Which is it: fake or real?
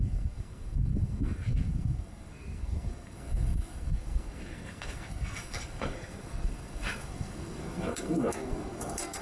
fake